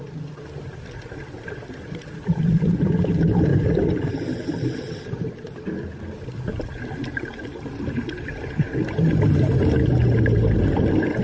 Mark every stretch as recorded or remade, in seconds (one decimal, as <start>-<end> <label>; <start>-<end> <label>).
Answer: 0.0-11.2 recorded

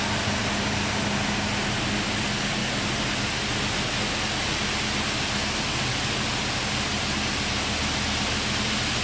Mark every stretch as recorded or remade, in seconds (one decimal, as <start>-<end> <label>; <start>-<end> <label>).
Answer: 0.0-9.0 recorded